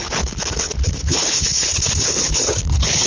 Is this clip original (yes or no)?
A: no